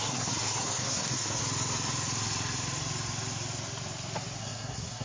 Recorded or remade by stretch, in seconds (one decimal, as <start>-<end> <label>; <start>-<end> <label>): 0.0-1.4 remade; 1.4-4.4 recorded; 4.4-5.0 remade